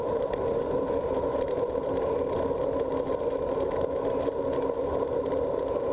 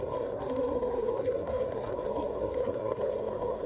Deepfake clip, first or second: second